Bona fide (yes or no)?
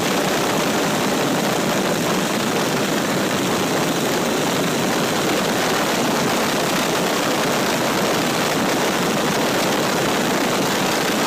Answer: yes